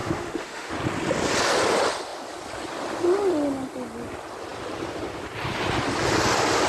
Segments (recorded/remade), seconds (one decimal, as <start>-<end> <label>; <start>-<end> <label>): 0.0-0.7 remade; 0.7-6.7 recorded